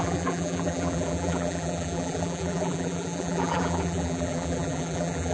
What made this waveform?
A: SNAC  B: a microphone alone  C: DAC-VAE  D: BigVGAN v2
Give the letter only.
D